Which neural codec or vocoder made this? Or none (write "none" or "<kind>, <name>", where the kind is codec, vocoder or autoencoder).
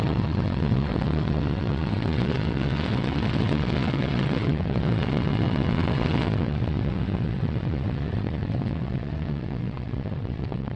vocoder, WaveNeXt